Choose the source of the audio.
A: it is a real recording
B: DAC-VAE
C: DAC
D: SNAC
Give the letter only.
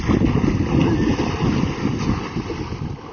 A